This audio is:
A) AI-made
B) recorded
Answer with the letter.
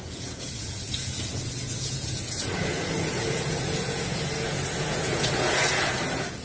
A